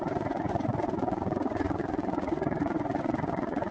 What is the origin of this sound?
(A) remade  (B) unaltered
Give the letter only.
A